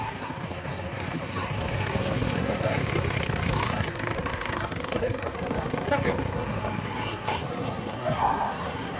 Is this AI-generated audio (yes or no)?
yes